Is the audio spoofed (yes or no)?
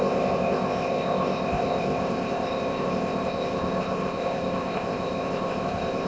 yes